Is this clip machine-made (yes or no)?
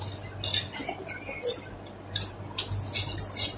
no